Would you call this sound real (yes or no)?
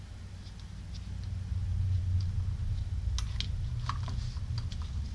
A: yes